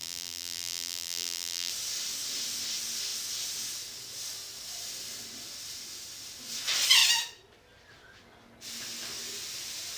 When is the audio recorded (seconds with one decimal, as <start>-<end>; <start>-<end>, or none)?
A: 1.7-10.0